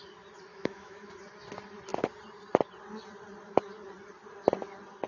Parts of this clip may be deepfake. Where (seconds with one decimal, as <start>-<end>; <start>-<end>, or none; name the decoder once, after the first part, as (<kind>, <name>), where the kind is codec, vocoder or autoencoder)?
0.5-1.1 (autoencoder, DAC-VAE)